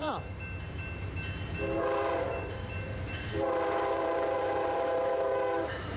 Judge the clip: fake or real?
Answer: fake